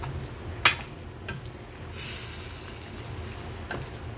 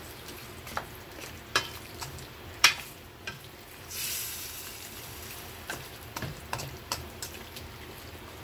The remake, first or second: second